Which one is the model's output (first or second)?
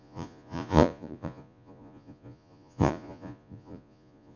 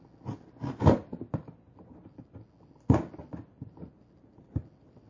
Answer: first